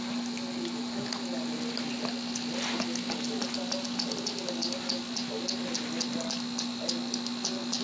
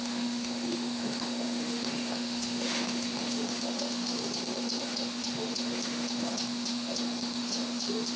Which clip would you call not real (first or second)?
second